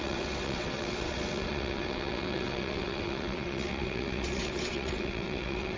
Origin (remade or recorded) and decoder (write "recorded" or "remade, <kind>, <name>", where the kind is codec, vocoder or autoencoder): remade, vocoder, WaveNeXt